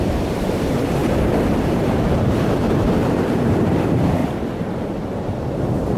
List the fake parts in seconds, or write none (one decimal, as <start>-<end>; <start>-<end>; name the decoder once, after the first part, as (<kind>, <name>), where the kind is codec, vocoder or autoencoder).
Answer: 0.0-4.2 (vocoder, BigVGAN v2); 4.9-6.0